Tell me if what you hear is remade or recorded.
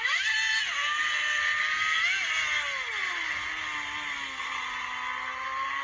recorded